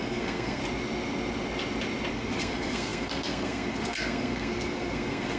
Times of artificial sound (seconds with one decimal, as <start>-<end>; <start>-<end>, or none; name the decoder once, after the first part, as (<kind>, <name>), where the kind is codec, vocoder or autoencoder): 0.0-0.6 (codec, SNAC); 2.1-5.4